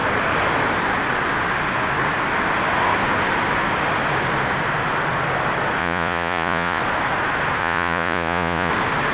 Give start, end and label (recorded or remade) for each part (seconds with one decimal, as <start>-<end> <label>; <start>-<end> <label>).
0.0-5.8 recorded; 5.8-6.8 remade; 6.8-7.6 recorded; 7.6-8.7 remade; 8.7-9.1 recorded